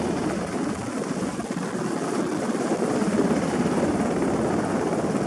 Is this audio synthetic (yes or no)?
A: no